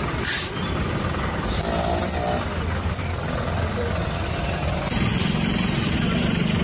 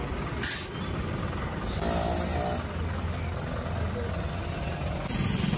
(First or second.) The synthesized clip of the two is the first